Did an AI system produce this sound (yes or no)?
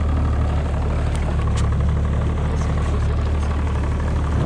no